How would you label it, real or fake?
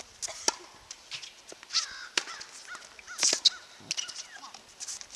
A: real